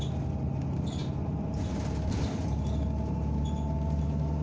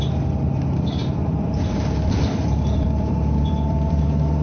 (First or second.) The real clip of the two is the first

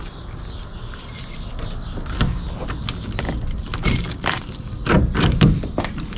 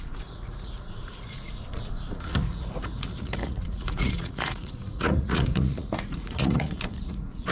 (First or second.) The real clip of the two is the first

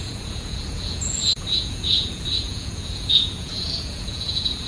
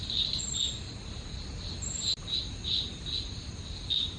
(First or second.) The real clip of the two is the second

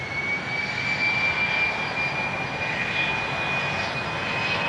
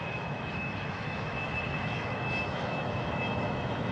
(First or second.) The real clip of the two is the first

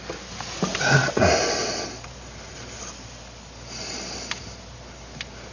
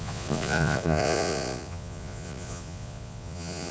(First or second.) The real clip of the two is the first